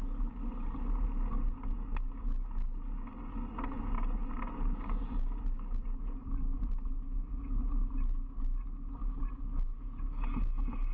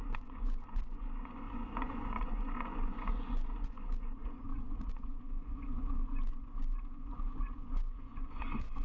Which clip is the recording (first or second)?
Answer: first